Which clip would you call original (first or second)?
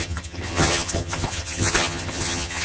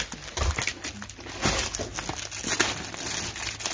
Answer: second